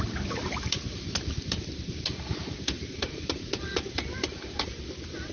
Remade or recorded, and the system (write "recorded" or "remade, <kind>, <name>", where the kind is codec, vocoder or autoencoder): remade, vocoder, BigVGAN v2